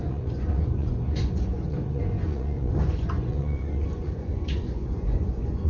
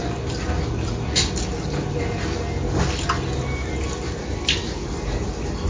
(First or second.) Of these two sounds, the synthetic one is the first